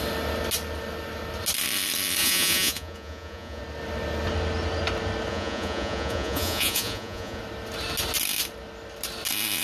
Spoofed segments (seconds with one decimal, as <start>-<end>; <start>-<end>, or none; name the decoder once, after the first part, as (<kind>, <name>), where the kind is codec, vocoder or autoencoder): 2.2-3.6 (vocoder, Vocos); 5.3-7.4